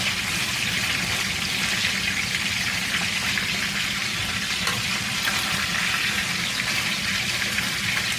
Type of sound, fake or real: real